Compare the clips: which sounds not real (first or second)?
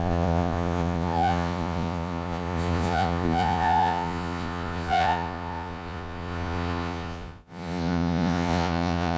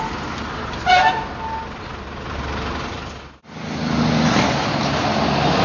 first